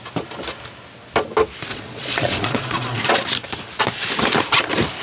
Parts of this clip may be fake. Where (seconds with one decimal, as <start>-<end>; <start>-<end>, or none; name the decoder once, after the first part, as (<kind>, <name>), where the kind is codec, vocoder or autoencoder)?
1.7-3.1 (vocoder, Vocos)